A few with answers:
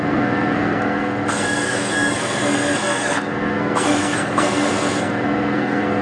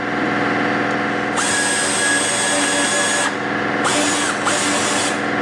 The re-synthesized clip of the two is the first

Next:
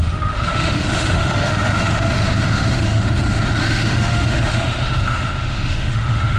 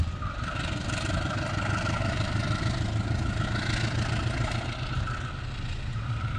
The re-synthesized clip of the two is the first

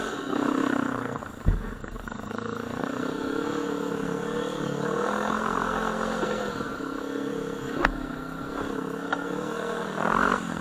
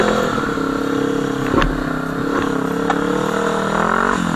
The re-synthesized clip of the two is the first